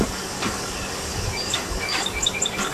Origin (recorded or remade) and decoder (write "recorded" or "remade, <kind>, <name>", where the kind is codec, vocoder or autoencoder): remade, codec, DAC